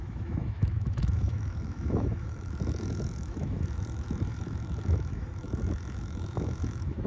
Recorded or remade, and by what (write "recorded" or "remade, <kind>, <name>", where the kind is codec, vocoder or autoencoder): remade, autoencoder, DAC-VAE